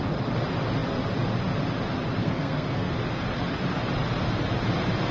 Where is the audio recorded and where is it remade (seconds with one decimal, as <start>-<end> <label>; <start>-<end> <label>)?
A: 0.0-2.2 recorded; 2.2-2.9 remade; 2.9-5.1 recorded